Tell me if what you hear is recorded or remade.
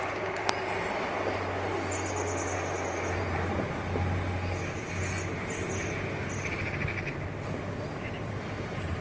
recorded